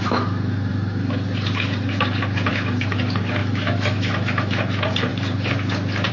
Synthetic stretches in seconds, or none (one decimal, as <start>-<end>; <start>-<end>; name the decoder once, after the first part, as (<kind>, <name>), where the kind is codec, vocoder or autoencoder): 3.4-4.6 (autoencoder, DAC-VAE)